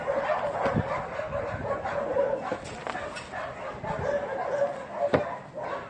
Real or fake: real